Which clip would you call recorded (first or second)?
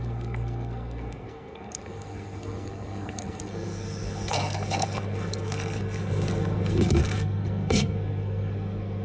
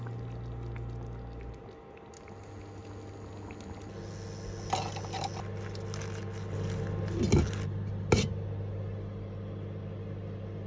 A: second